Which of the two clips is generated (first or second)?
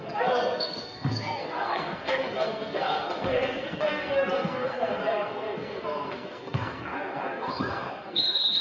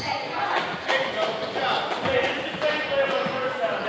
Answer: first